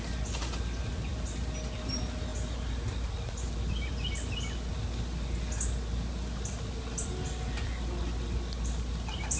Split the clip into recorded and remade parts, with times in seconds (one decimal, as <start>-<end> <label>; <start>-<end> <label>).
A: 0.0-9.4 recorded